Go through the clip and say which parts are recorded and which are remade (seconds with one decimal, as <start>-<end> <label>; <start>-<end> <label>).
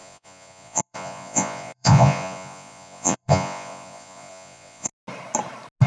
0.0-4.9 remade; 4.9-5.9 recorded